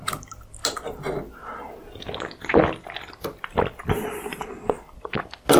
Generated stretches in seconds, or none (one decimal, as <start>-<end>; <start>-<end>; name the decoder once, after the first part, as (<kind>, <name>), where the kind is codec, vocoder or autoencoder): none